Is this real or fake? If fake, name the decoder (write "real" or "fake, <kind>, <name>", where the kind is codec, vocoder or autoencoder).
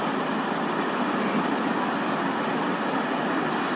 real